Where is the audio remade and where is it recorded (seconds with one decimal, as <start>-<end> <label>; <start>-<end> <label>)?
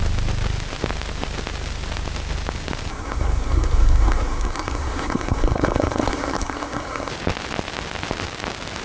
0.0-2.9 recorded; 2.9-7.1 remade; 7.1-8.8 recorded